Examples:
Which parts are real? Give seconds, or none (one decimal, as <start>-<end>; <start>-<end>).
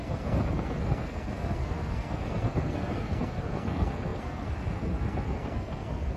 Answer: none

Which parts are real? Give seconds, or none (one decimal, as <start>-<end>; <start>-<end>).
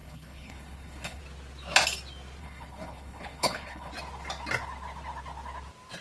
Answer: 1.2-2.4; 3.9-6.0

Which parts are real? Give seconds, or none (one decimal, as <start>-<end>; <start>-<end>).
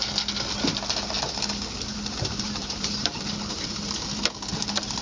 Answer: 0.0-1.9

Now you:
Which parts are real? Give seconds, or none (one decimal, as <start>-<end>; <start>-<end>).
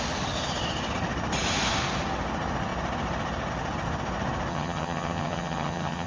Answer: 0.0-4.5